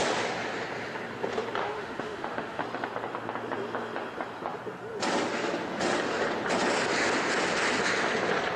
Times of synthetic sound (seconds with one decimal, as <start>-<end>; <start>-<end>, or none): 1.6-2.6